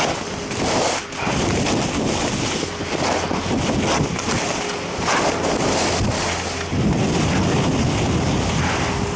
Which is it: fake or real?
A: real